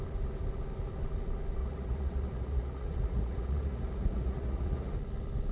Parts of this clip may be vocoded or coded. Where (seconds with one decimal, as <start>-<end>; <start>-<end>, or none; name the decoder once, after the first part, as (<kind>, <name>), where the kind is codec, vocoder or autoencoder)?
1.6-4.9 (vocoder, Vocos)